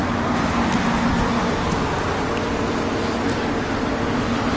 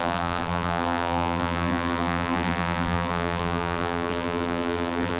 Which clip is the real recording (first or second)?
first